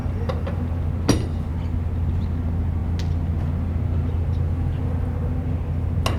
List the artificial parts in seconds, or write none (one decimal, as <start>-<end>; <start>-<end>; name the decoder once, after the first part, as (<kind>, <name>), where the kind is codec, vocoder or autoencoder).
0.0-0.6 (vocoder, BigVGAN v2)